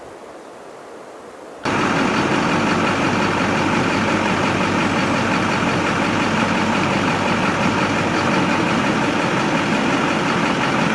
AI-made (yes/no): no